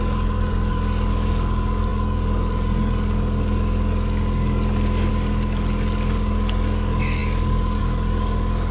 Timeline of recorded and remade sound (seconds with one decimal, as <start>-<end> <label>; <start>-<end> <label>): 0.0-8.7 remade